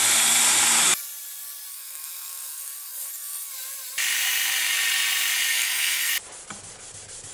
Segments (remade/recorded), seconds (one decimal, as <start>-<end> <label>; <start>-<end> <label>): 0.0-1.7 recorded; 1.7-3.5 remade; 3.5-5.5 recorded; 5.5-6.1 remade; 6.1-7.3 recorded